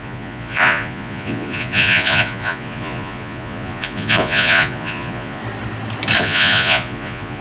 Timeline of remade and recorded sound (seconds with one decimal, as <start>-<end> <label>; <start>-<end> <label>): 0.0-5.4 remade; 5.4-6.2 recorded; 6.2-7.4 remade